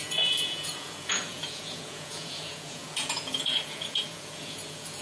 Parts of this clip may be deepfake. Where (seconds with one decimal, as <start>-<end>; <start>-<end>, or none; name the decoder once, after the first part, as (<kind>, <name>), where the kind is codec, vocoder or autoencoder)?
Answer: 0.0-5.0 (vocoder, Vocos)